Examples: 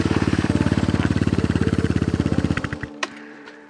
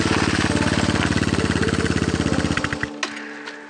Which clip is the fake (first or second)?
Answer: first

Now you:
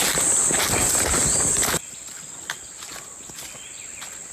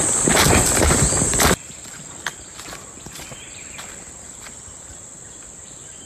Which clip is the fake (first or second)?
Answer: second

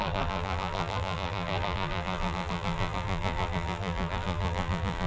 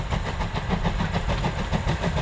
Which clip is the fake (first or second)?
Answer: first